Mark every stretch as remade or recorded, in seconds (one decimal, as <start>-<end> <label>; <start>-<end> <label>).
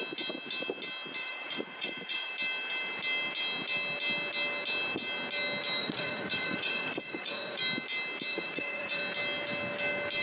0.0-1.2 recorded; 1.2-2.3 remade; 2.3-5.8 recorded; 5.8-7.6 remade; 7.6-8.3 recorded; 8.3-9.0 remade; 9.0-10.2 recorded